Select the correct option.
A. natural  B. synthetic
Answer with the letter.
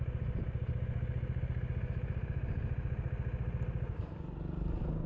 A